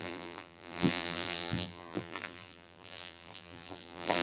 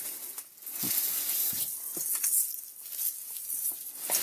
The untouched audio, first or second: second